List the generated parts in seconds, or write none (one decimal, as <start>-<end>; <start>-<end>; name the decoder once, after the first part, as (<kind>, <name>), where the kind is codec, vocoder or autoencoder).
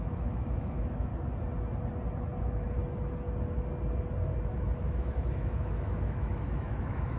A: 0.0-1.1 (autoencoder, DAC-VAE); 2.4-2.8; 4.5-7.2